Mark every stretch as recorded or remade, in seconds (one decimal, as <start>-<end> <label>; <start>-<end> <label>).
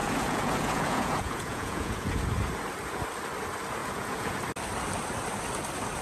0.0-2.2 remade; 2.2-3.8 recorded; 3.8-4.4 remade; 4.4-6.0 recorded